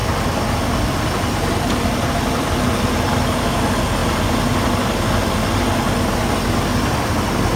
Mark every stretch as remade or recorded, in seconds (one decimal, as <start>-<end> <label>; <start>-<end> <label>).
0.0-4.0 remade; 4.0-7.6 recorded